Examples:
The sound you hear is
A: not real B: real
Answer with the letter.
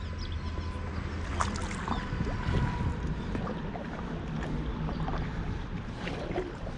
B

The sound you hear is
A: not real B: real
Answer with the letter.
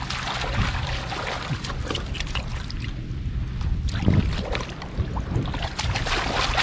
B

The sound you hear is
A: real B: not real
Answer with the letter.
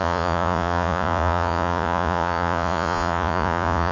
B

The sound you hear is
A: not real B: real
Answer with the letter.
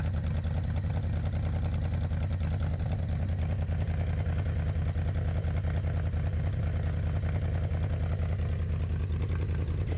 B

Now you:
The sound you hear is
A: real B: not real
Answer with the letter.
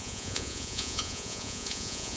B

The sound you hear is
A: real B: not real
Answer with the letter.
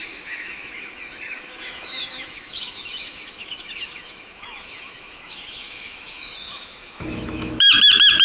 B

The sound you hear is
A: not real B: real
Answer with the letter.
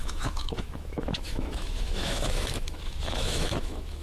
A